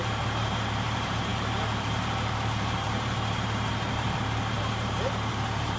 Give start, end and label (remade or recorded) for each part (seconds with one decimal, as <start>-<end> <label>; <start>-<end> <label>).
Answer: 0.0-5.8 remade